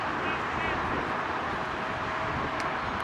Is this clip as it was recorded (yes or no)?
yes